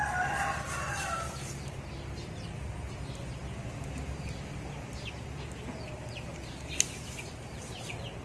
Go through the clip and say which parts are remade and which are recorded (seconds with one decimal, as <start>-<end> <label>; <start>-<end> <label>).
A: 0.0-8.2 recorded